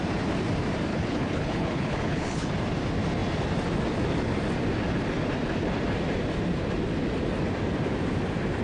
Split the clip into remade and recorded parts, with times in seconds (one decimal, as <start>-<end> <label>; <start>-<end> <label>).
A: 0.0-0.9 recorded; 0.9-2.5 remade; 2.5-8.6 recorded